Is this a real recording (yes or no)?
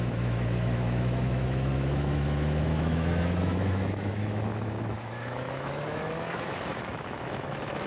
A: no